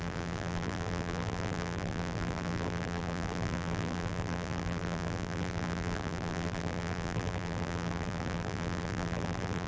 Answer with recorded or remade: remade